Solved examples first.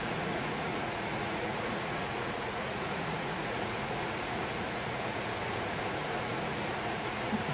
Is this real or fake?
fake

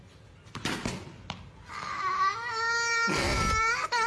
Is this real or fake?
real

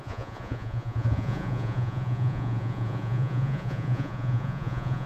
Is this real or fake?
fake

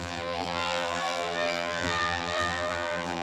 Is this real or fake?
fake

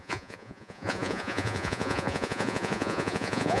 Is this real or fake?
fake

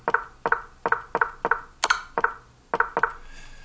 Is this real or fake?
real